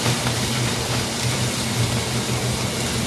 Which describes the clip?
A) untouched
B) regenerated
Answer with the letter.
A